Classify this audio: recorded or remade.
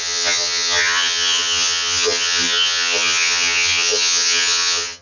remade